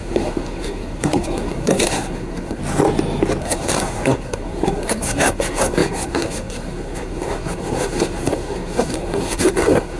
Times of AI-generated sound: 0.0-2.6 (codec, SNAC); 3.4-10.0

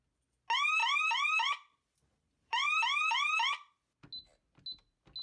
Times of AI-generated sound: 0.8-3.7 (vocoder, BigVGAN v2)

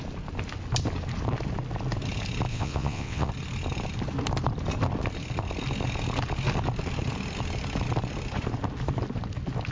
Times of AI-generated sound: 2.5-3.3 (vocoder, WaveNeXt)

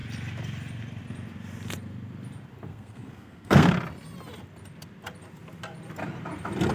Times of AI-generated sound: 2.7-3.7 (codec, SNAC)

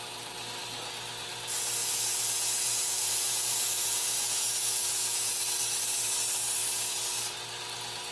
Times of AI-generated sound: 1.8-5.3 (vocoder, Vocos)

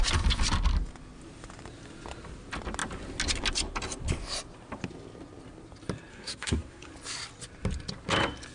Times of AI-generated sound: 6.1-6.9 (codec, SNAC)

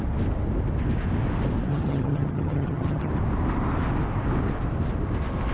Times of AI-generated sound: 1.7-3.1 (vocoder, HiFi-GAN)